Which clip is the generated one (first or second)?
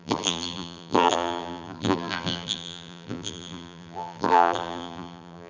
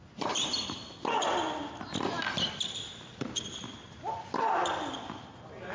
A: first